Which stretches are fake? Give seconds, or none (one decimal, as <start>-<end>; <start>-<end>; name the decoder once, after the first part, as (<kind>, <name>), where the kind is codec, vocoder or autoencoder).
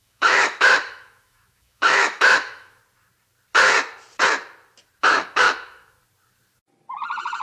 0.0-2.8 (autoencoder, DAC-VAE); 5.0-6.0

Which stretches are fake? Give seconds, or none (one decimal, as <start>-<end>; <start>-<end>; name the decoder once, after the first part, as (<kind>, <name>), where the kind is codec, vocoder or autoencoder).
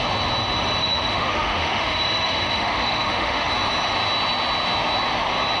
0.8-3.5 (autoencoder, DAC-VAE)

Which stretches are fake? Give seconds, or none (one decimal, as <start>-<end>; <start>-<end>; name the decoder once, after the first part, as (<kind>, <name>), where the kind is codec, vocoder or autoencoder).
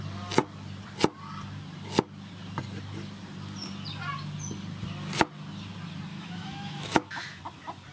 6.1-7.4 (autoencoder, DAC-VAE)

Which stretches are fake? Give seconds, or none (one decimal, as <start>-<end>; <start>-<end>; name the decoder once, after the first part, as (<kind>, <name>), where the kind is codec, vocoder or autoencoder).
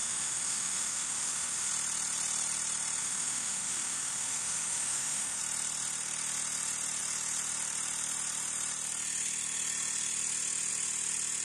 0.0-1.7 (autoencoder, DAC-VAE); 3.0-5.4